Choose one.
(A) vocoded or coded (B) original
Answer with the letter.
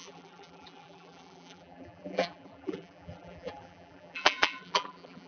A